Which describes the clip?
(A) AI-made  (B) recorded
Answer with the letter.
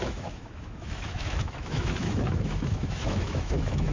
A